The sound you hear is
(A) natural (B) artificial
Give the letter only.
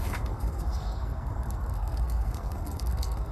B